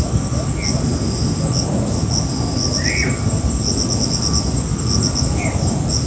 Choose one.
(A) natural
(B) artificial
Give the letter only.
A